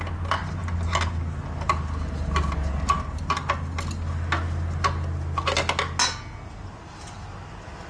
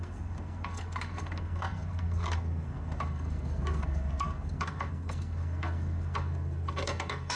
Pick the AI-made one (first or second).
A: second